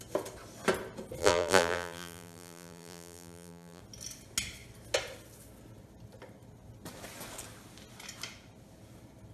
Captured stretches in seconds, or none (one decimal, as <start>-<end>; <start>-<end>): 0.0-1.2; 3.8-9.3